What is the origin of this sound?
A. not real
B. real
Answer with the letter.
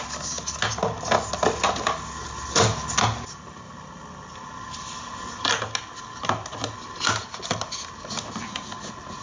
B